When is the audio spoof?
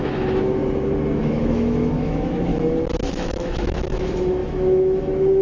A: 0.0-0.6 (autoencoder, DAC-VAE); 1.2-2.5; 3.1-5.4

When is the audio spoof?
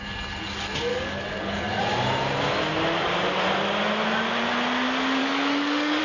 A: 0.9-1.8 (codec, DAC); 5.2-6.0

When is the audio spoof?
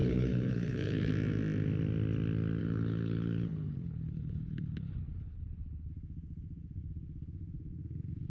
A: 0.0-1.1 (codec, HILCodec); 2.6-5.9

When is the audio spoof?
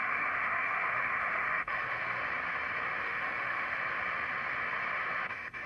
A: 0.0-2.2 (autoencoder, DAC-VAE); 3.0-3.8; 5.3-5.7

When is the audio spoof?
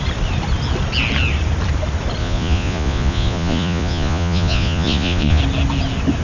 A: 2.2-5.4 (vocoder, Vocos)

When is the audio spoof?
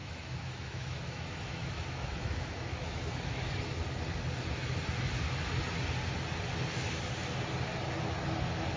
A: 0.0-3.5 (autoencoder, DAC-VAE)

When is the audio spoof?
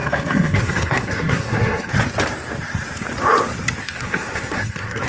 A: 0.0-1.9 (codec, SNAC); 3.8-5.1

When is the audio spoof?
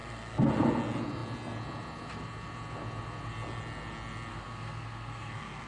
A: 0.0-0.5 (codec, SNAC); 4.3-5.7